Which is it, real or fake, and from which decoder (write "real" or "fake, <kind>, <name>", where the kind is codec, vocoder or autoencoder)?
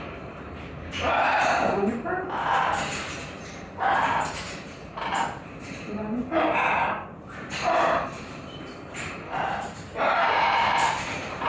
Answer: fake, vocoder, BigVGAN v2